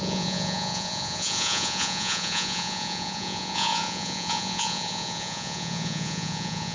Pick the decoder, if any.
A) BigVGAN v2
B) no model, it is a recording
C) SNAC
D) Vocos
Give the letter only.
D